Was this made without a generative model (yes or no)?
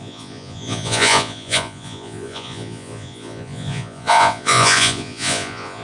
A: no